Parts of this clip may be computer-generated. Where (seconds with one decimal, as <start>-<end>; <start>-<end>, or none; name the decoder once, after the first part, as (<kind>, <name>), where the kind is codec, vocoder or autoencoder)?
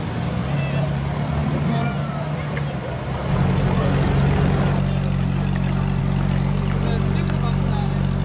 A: none